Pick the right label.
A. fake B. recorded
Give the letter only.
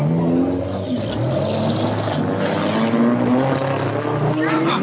B